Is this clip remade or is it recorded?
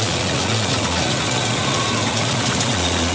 remade